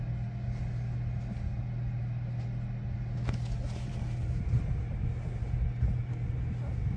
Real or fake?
real